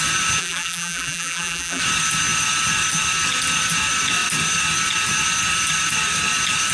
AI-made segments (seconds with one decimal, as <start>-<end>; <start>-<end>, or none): 0.4-1.8

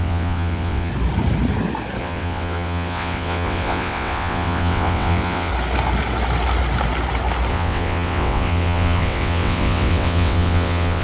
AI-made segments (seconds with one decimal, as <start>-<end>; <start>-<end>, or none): 0.0-0.9; 2.0-5.5; 7.5-11.0

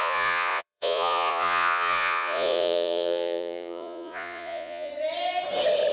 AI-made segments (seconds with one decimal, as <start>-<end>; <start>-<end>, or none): 0.0-4.9

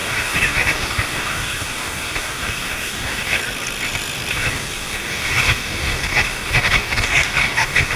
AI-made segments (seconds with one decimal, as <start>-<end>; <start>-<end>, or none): 0.0-3.4; 4.3-8.0

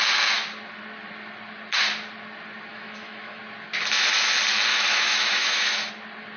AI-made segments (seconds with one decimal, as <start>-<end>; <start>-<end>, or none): 2.7-3.4; 4.7-5.9

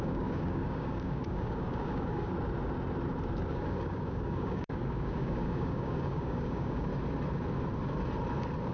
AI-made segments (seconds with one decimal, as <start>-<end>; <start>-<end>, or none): 0.0-2.3; 3.5-6.9

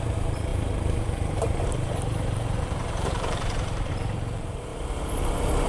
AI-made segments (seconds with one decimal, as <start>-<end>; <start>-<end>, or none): 0.0-4.7

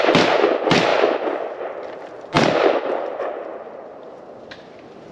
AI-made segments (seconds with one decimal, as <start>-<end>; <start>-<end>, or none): none